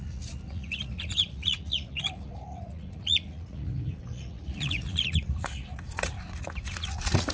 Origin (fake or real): fake